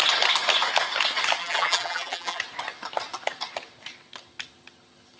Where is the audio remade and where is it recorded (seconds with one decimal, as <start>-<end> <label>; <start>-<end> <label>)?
0.0-1.4 recorded; 1.4-2.4 remade; 2.4-5.2 recorded

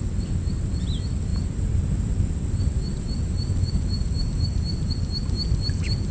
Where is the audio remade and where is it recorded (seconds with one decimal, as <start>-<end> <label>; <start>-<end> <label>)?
0.0-1.3 recorded; 1.3-4.9 remade; 4.9-6.1 recorded

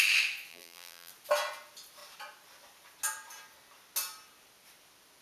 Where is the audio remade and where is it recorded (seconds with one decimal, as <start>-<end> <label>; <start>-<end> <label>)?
0.0-0.5 recorded; 0.5-1.1 remade; 1.1-5.2 recorded